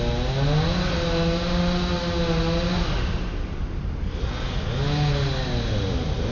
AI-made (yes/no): no